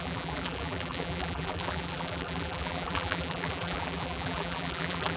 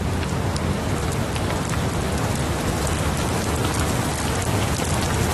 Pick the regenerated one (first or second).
first